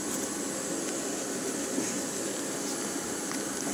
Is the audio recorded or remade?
recorded